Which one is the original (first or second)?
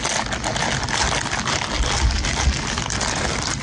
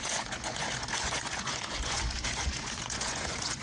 first